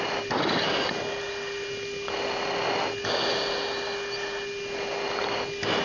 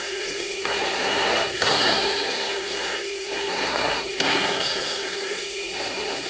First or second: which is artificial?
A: second